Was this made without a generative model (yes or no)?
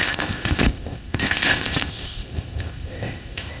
no